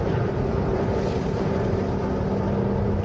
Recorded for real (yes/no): yes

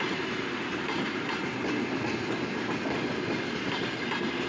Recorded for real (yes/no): yes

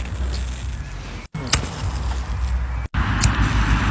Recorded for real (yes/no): yes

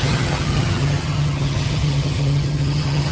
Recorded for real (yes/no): no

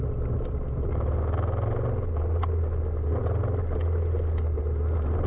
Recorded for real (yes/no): yes